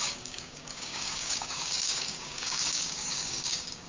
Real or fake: fake